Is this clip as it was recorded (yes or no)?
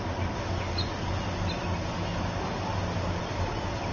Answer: yes